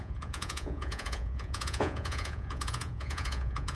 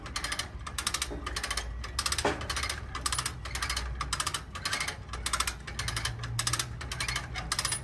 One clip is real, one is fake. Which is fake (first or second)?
first